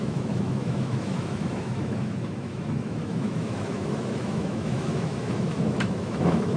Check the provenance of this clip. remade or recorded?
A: remade